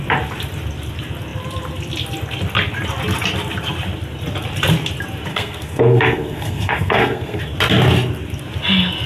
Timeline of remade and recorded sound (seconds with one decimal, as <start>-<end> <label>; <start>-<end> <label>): 0.0-5.3 recorded; 5.3-7.4 remade; 7.4-9.1 recorded